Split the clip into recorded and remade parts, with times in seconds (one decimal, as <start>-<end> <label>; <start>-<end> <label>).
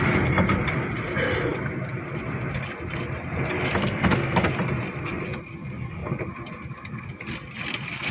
0.0-3.8 recorded; 3.8-4.5 remade; 4.5-8.1 recorded